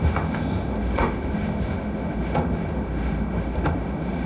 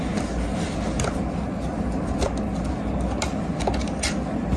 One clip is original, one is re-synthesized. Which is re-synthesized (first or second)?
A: first